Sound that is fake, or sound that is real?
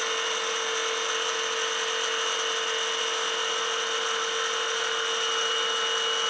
real